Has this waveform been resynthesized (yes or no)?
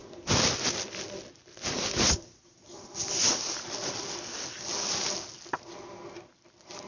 no